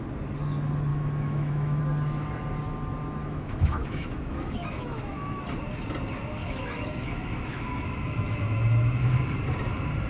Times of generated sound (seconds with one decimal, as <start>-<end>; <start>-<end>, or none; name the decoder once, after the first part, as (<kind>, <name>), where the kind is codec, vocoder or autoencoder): 0.9-1.8 (autoencoder, DAC-VAE); 3.2-5.4; 6.4-9.2